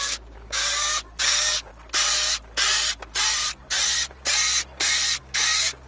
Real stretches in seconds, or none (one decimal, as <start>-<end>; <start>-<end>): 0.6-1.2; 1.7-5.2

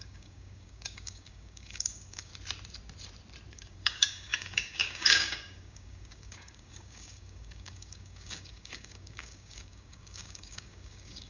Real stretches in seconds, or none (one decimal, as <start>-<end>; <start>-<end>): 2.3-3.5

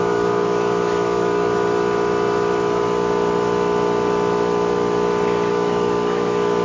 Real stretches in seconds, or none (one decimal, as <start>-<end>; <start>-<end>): 1.5-5.5